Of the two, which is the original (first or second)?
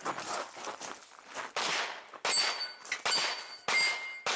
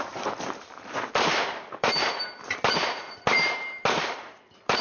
first